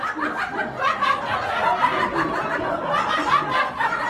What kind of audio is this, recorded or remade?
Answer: recorded